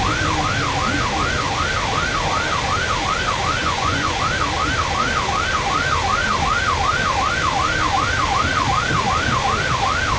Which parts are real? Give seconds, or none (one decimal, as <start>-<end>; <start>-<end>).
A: 0.0-3.6; 4.2-10.2